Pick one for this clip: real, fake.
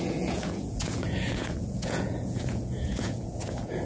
fake